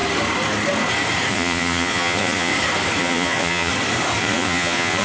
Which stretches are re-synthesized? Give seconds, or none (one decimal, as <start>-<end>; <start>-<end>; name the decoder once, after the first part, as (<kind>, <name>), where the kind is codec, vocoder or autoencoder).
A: 1.3-2.5 (vocoder, Vocos); 3.0-3.7; 4.2-5.0